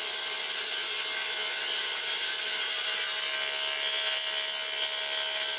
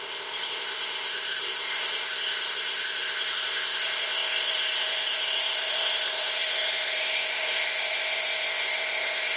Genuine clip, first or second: first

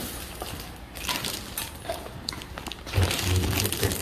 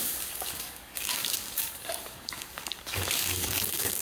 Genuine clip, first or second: first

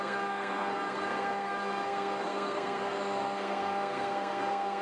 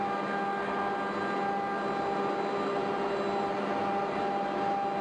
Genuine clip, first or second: second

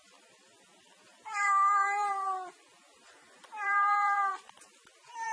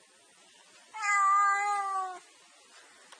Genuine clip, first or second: second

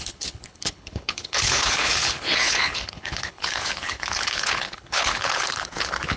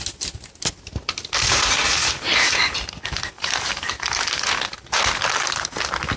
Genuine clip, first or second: second